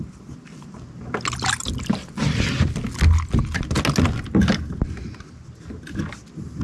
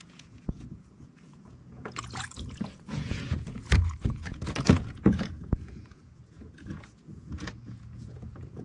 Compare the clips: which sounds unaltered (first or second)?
first